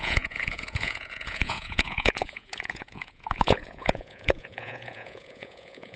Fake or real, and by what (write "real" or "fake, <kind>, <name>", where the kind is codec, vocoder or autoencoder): fake, vocoder, Vocos